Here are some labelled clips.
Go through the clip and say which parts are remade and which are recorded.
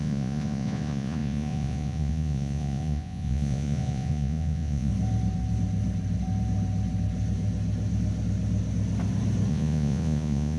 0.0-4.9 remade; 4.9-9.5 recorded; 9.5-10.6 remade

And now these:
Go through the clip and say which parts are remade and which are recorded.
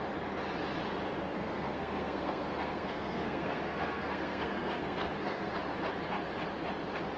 0.0-1.2 recorded; 1.2-5.5 remade; 5.5-7.2 recorded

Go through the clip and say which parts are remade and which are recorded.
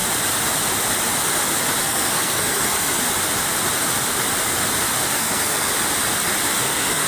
0.0-1.8 recorded; 1.8-3.0 remade; 3.0-5.1 recorded; 5.1-5.7 remade; 5.7-6.6 recorded; 6.6-7.1 remade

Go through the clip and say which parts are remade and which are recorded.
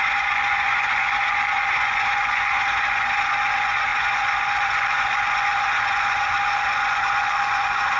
0.0-8.0 remade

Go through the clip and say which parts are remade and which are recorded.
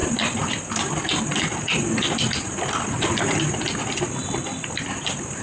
0.0-5.4 recorded